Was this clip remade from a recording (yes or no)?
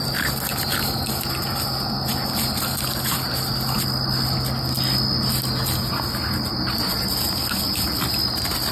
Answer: no